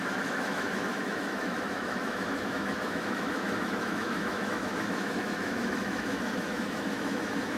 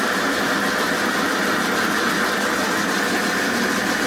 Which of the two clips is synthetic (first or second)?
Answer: first